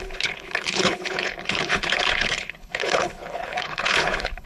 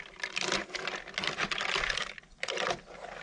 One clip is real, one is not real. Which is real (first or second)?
second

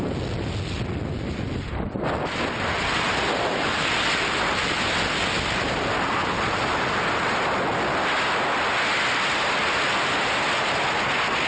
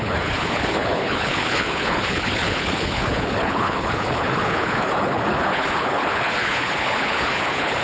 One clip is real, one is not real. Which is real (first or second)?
first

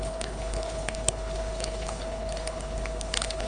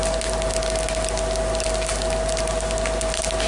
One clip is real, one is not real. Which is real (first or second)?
second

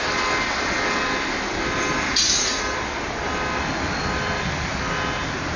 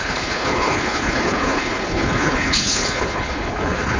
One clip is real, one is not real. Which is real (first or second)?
first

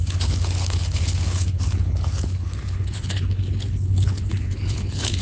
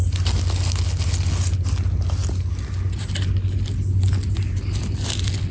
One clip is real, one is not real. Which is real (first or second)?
second